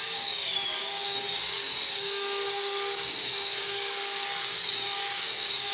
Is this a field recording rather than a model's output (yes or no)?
no